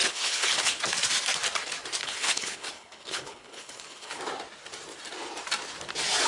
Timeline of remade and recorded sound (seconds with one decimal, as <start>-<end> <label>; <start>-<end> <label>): 0.0-0.8 remade; 0.8-2.0 recorded; 2.0-4.2 remade; 4.2-6.3 recorded